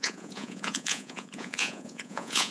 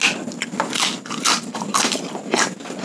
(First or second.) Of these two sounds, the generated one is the first